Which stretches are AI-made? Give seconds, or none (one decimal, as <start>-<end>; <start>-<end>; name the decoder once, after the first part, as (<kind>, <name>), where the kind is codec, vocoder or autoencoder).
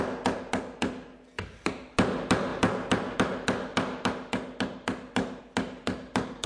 none